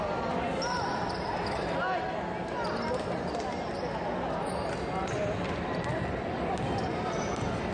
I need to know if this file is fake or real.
real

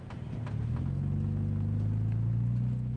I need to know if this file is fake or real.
real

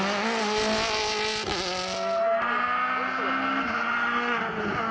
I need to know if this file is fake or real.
real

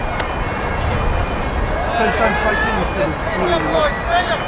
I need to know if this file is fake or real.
real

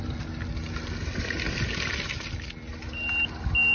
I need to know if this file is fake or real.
real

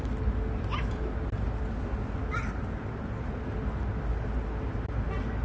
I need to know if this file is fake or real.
real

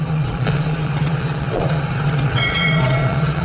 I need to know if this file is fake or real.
fake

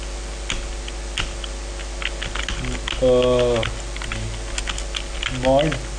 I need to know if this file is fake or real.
real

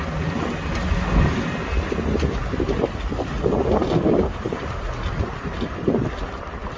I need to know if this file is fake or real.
real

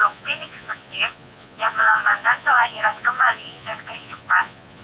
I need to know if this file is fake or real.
fake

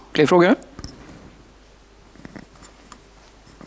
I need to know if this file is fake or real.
real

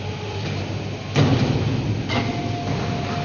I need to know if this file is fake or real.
real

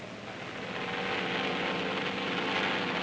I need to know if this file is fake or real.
real